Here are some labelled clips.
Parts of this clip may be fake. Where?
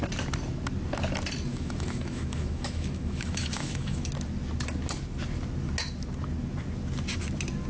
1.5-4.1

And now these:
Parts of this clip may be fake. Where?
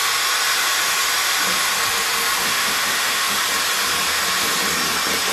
2.4-3.4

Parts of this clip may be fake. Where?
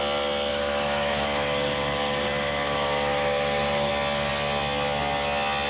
0.5-3.9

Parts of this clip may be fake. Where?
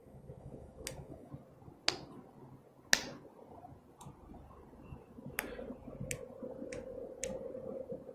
0.0-1.3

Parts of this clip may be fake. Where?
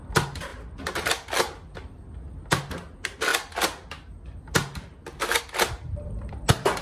none